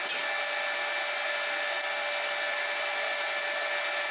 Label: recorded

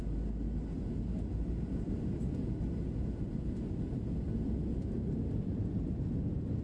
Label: recorded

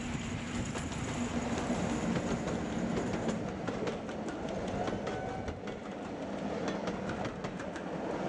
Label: recorded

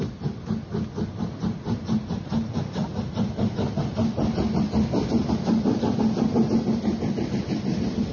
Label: recorded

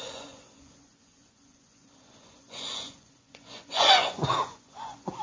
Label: remade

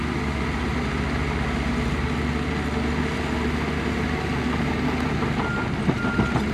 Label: recorded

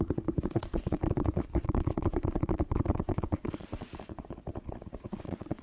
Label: remade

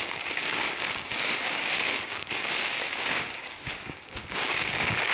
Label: remade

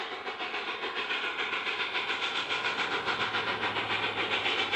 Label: recorded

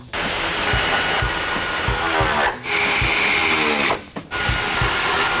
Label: recorded